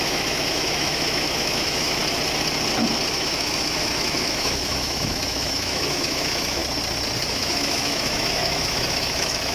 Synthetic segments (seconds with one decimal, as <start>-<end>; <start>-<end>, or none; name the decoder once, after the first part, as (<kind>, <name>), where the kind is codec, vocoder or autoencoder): 0.0-2.0 (autoencoder, DAC-VAE); 3.1-6.6; 7.2-9.5